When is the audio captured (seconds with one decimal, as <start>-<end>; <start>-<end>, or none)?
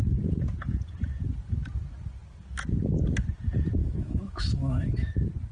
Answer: 0.0-3.8; 5.1-5.5